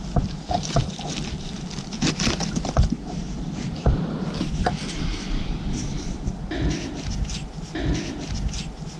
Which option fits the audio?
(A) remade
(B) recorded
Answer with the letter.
A